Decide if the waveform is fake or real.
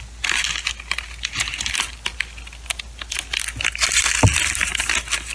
real